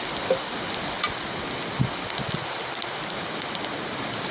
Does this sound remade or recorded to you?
recorded